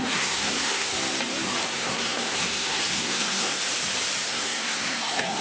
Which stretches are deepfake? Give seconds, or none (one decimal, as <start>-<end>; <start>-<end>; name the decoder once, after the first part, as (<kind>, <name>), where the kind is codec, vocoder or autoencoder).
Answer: 0.0-0.9 (codec, SNAC); 1.7-3.6; 4.3-5.4